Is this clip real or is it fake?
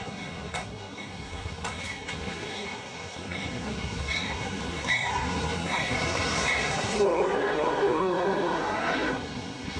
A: fake